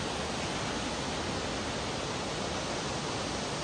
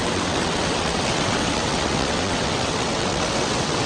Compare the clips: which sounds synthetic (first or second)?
second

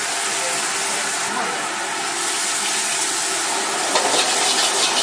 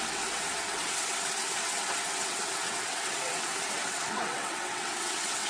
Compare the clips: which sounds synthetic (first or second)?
second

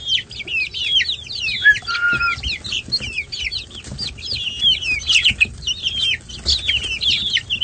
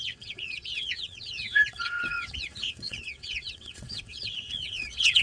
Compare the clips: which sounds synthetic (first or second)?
second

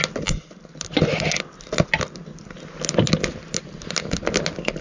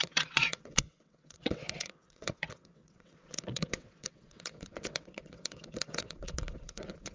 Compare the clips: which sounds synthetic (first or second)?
second